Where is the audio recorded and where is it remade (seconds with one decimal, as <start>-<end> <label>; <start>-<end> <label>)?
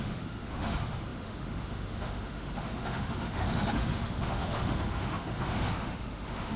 0.0-6.6 remade